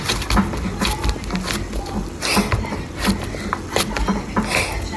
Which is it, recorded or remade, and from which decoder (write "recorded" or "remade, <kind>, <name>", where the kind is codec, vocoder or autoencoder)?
recorded